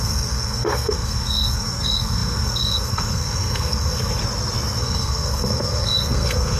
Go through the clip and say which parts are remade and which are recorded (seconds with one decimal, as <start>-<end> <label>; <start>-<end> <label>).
0.0-4.2 remade; 4.2-4.8 recorded; 4.8-6.6 remade